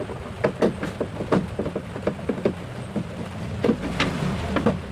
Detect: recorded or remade recorded